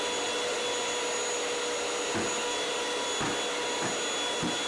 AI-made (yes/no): no